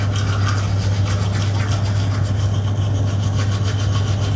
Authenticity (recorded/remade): recorded